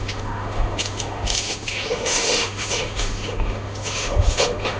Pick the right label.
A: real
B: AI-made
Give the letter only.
B